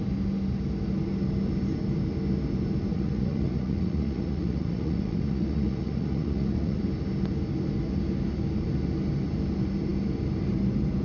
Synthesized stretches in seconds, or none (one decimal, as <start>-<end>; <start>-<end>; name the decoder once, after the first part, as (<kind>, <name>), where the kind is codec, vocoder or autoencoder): 2.9-6.8 (vocoder, Vocos)